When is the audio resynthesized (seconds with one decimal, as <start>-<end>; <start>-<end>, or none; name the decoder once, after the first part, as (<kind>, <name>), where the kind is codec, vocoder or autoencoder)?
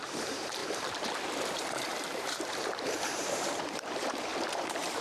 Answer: 0.0-5.0 (vocoder, BigVGAN v2)